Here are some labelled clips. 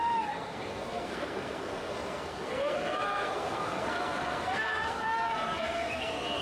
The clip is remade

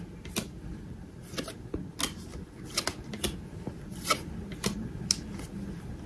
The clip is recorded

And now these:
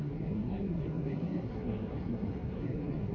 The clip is remade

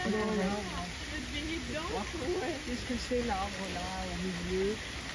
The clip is recorded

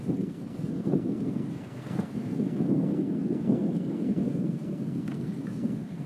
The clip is remade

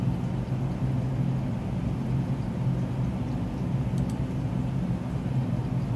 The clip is recorded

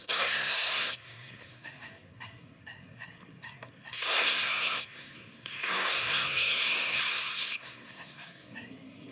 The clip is remade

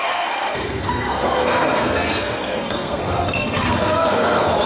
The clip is remade